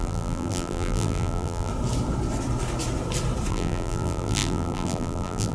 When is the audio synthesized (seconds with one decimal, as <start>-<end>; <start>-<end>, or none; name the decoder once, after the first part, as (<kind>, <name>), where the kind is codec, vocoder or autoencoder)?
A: 0.0-1.7 (vocoder, BigVGAN v2); 3.5-5.5